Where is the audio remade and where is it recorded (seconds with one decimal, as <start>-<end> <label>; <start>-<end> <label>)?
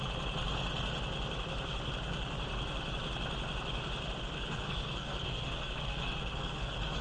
0.0-4.2 recorded; 4.2-7.0 remade